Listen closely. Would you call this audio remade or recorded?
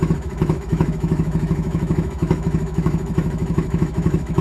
remade